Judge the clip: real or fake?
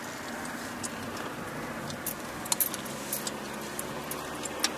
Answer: real